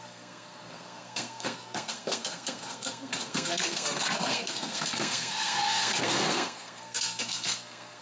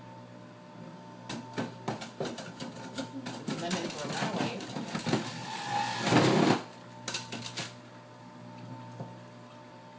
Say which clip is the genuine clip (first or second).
second